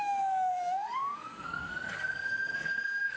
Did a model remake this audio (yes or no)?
yes